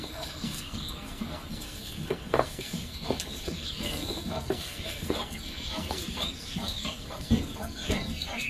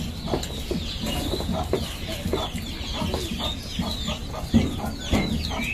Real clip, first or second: second